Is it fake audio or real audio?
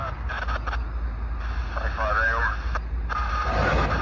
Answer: real